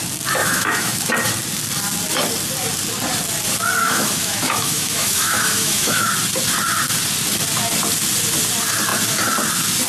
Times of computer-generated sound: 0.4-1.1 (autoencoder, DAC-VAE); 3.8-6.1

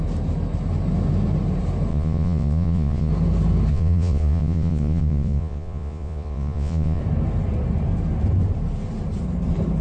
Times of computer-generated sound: 1.9-3.1 (vocoder, Vocos); 3.7-7.0

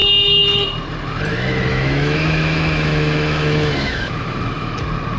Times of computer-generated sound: 1.7-4.8 (autoencoder, DAC-VAE)